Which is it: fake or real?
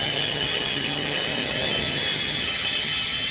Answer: fake